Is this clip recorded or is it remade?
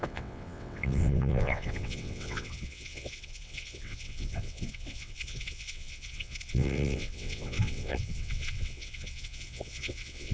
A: remade